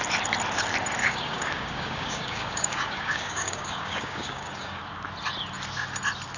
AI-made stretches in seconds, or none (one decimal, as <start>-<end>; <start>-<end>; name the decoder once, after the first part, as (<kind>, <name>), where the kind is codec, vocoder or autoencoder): 1.0-4.8 (codec, DAC)